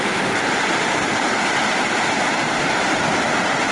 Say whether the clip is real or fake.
real